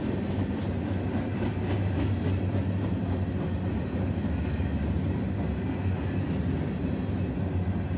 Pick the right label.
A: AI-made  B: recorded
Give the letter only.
B